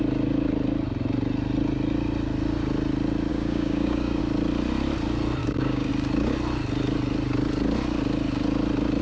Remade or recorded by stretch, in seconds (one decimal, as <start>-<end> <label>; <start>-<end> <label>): 0.0-3.3 recorded; 3.3-4.2 remade; 4.2-5.4 recorded; 5.4-5.9 remade; 5.9-9.0 recorded